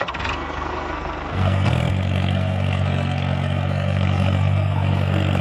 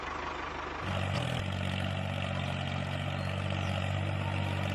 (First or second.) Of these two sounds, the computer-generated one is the first